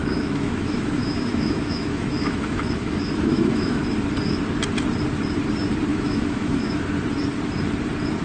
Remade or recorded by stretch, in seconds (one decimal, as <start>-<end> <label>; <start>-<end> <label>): 0.0-3.8 remade; 3.8-5.9 recorded; 5.9-6.8 remade; 6.8-8.2 recorded